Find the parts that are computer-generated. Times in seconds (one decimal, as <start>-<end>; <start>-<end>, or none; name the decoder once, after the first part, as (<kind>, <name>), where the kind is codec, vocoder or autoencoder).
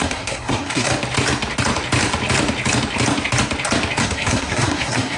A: 0.0-0.9 (codec, SNAC); 4.0-5.2